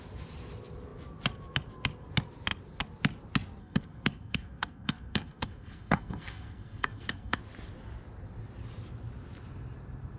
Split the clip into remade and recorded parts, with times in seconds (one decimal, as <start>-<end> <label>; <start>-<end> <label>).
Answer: 0.0-3.6 recorded; 3.6-7.4 remade; 7.4-10.2 recorded